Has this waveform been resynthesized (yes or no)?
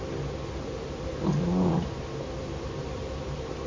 no